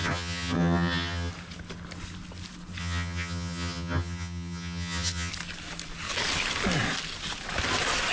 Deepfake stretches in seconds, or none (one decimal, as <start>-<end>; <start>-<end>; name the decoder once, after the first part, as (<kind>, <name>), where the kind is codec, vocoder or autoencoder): 0.0-1.3 (vocoder, HiFi-GAN); 2.8-5.3